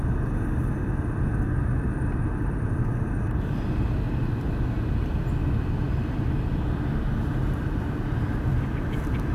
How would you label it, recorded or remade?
recorded